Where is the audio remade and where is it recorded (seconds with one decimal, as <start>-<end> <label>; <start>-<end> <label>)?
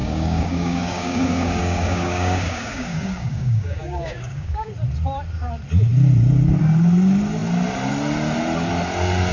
0.0-4.7 remade; 4.7-9.3 recorded